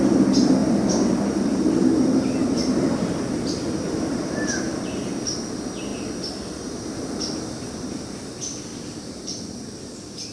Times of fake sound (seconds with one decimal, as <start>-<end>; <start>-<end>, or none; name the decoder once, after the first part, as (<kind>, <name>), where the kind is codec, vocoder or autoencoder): 0.6-5.1 (vocoder, BigVGAN v2); 5.9-8.1; 8.7-9.8